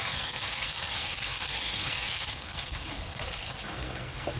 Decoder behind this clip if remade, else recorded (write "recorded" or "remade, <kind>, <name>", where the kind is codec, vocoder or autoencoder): remade, codec, SNAC